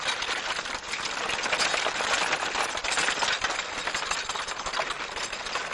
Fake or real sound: real